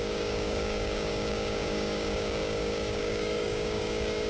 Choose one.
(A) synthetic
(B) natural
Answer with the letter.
A